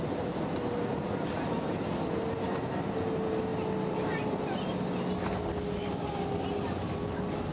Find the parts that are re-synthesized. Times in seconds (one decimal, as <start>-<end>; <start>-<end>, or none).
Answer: 0.9-2.6